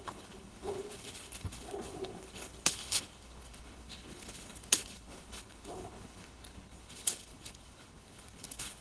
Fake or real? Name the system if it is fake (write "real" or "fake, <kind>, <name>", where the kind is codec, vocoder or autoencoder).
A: fake, codec, HILCodec